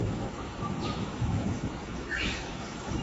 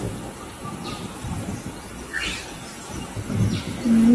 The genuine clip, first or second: second